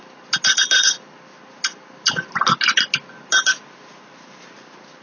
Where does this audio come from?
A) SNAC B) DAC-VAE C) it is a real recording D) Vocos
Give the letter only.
C